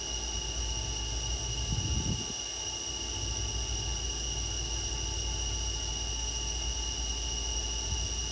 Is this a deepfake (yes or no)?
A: no